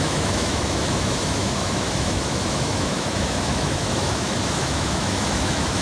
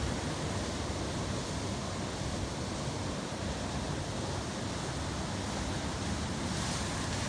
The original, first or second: second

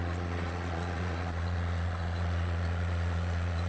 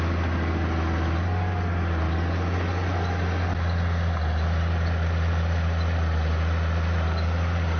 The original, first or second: second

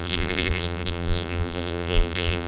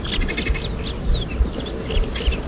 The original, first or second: second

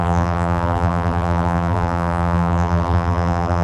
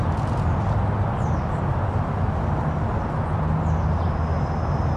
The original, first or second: second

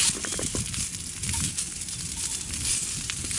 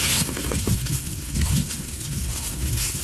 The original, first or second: first